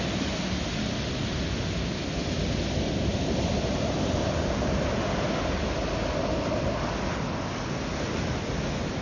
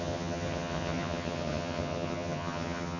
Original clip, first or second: first